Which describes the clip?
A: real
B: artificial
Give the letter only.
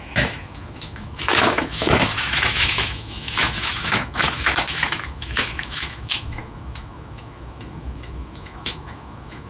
B